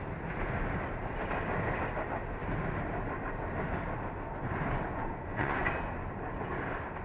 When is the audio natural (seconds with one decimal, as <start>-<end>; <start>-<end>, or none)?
0.0-4.9; 5.7-7.0